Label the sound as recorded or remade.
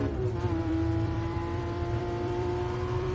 remade